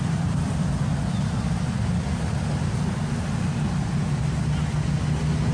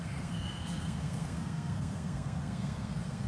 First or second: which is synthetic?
second